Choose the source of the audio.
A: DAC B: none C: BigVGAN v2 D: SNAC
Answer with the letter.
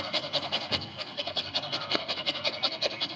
D